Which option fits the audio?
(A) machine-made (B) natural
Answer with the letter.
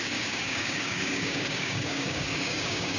A